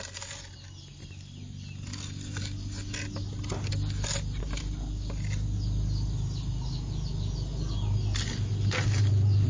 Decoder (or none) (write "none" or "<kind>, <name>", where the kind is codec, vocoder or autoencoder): none